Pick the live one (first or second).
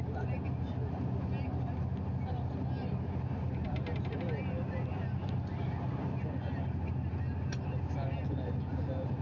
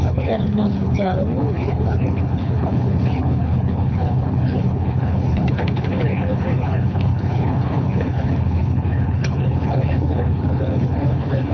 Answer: first